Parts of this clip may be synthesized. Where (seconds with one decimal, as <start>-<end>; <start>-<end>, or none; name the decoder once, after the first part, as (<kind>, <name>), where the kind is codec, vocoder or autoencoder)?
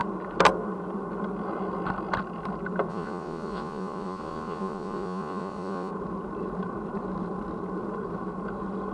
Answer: 2.9-5.9 (vocoder, Vocos)